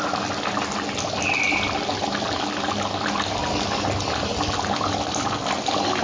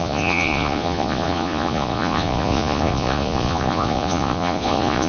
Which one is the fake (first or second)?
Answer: second